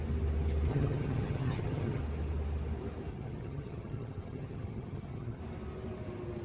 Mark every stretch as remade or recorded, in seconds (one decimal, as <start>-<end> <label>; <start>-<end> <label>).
0.0-0.7 recorded; 0.7-2.0 remade; 2.0-3.1 recorded; 3.1-5.4 remade; 5.4-6.4 recorded